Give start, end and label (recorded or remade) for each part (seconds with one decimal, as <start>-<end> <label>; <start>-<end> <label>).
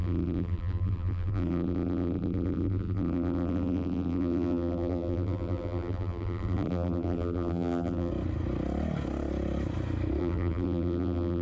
0.0-8.1 remade; 8.1-10.2 recorded; 10.2-11.4 remade